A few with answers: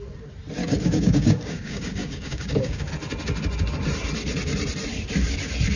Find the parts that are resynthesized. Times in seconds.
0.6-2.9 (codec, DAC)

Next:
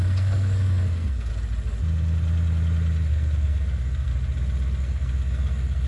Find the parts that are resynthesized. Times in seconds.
0.0-1.3 (codec, SNAC); 3.1-4.1; 4.8-5.9